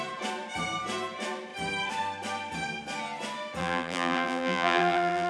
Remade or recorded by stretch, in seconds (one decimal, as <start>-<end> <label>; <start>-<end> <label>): 0.0-3.6 recorded; 3.6-5.3 remade